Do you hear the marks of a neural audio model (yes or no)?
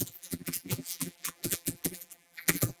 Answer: yes